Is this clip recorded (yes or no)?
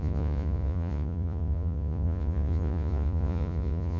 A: no